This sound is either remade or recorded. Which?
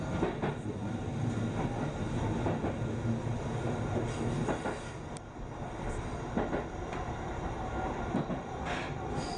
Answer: recorded